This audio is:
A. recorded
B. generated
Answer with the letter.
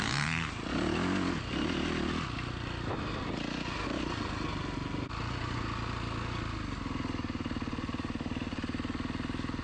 A